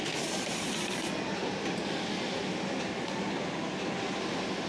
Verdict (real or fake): real